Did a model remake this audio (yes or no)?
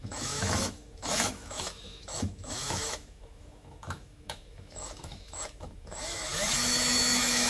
yes